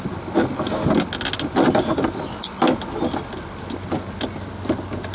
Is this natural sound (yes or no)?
yes